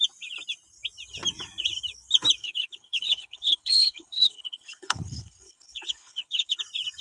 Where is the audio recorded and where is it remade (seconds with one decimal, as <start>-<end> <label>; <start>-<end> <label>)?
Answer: 0.0-2.4 recorded; 2.4-6.6 remade; 6.6-7.0 recorded